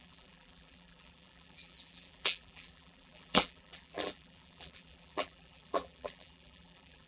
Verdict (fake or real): fake